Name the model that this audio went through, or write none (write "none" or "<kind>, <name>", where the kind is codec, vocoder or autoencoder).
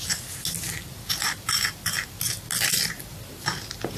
none